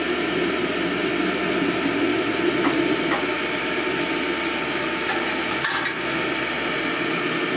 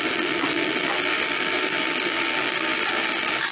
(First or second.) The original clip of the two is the first